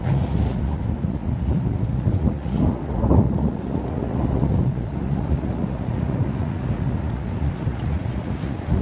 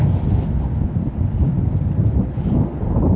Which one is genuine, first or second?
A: second